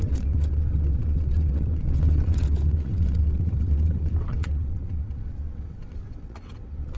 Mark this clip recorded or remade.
remade